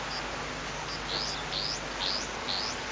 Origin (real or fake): real